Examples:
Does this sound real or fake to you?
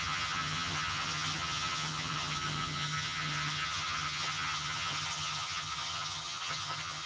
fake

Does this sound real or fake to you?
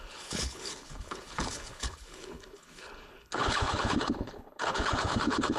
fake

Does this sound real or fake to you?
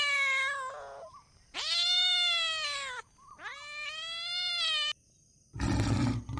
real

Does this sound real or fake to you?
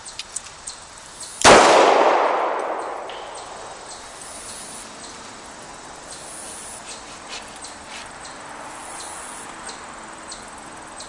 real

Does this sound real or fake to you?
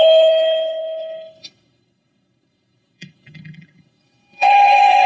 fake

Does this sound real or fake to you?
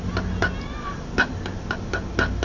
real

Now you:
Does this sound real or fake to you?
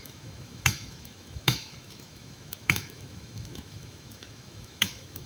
fake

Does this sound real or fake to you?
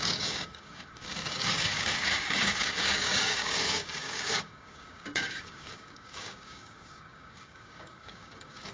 fake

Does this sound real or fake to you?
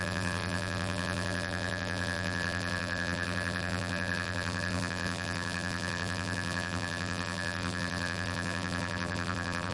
fake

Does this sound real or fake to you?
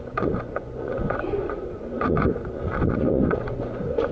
fake